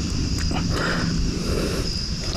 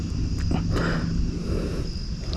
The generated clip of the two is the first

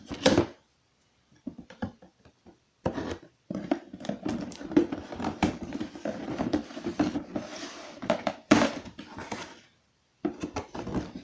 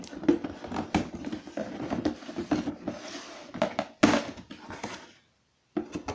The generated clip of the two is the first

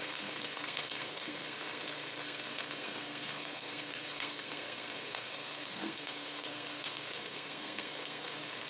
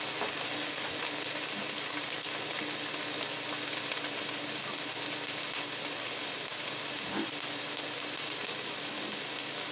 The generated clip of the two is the first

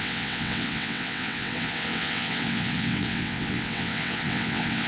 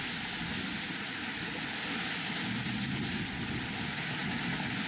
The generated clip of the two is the first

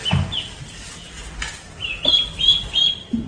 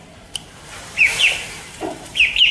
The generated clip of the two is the second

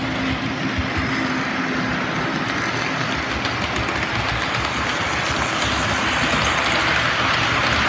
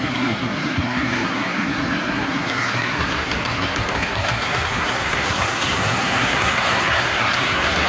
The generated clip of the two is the second